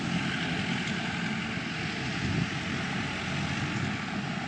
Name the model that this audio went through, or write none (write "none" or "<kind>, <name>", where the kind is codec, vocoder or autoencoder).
none